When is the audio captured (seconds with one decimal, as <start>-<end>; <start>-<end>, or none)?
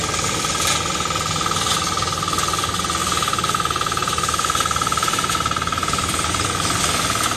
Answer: 0.0-3.0; 6.8-7.4